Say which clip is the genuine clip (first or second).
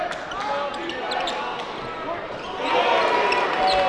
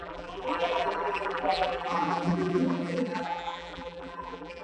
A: first